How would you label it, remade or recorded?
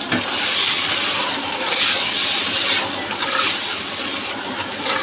recorded